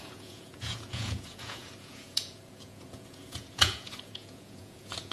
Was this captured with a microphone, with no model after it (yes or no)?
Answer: no